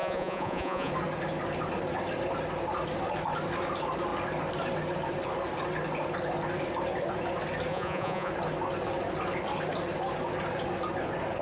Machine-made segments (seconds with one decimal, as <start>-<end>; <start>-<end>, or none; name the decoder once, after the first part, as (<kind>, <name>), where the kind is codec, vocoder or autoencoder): 0.0-0.9 (vocoder, Vocos); 7.7-8.3